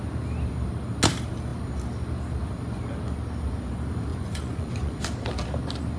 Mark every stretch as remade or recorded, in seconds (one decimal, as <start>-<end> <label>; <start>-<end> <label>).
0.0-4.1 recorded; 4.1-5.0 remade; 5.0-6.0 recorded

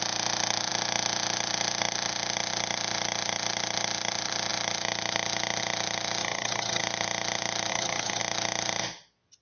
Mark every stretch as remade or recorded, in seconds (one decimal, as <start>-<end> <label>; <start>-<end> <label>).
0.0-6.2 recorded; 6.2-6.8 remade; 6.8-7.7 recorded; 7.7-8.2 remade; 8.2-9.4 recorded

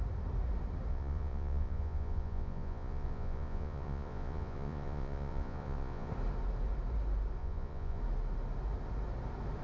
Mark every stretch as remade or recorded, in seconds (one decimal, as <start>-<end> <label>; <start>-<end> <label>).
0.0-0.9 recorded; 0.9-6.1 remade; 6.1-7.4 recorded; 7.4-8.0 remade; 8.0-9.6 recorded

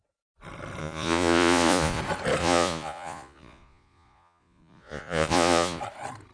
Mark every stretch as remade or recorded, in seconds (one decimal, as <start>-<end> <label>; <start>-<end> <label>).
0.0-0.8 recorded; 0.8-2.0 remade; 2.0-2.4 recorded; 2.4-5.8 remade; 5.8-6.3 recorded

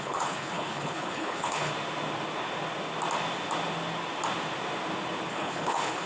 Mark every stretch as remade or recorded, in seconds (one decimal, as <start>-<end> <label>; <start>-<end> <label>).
0.0-1.7 remade; 1.7-5.3 recorded; 5.3-6.1 remade